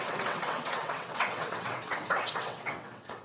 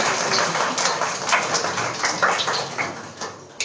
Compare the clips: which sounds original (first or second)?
second